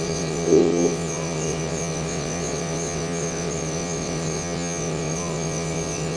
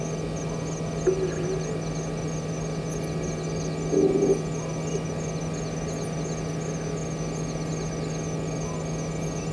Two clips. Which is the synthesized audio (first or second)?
first